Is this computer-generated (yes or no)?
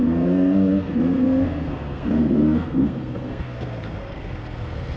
yes